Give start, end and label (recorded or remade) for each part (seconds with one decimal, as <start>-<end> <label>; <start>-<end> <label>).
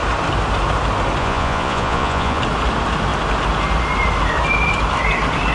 0.0-1.2 recorded; 1.2-2.4 remade; 2.4-5.5 recorded